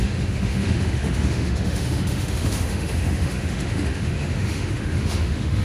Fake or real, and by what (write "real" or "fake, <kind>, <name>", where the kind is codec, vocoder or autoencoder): fake, autoencoder, DAC-VAE